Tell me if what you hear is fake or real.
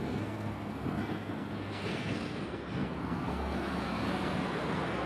fake